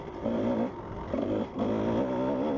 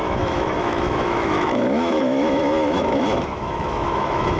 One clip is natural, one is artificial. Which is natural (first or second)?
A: first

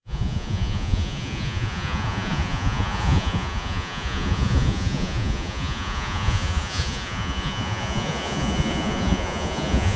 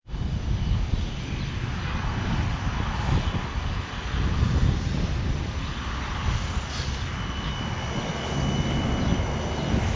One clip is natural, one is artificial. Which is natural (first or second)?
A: second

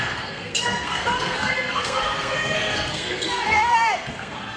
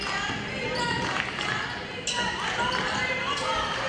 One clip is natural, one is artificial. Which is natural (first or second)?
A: second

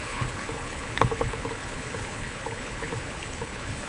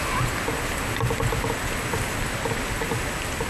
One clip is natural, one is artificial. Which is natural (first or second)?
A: second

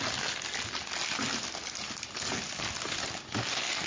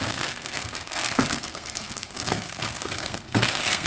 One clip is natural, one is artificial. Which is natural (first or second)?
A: first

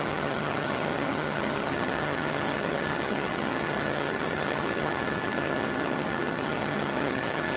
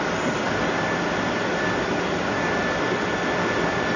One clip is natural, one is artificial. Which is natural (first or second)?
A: second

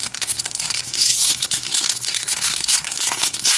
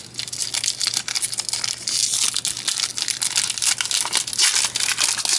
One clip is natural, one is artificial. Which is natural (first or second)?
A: second